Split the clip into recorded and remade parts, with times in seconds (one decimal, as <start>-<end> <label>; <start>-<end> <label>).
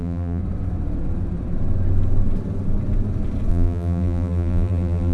0.0-0.4 remade; 0.4-3.5 recorded; 3.5-5.1 remade